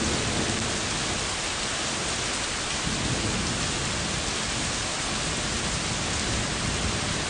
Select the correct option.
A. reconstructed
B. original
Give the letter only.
B